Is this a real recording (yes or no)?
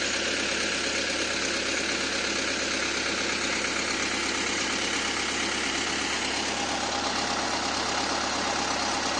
yes